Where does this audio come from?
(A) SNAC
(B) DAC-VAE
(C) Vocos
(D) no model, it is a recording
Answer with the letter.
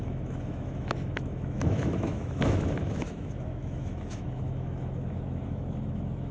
B